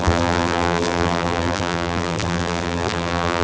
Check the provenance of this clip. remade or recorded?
remade